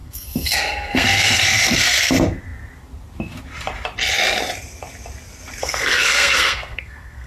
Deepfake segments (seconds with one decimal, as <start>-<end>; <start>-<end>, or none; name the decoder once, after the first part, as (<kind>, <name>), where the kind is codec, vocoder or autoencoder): 0.0-2.1 (codec, SNAC); 5.6-7.3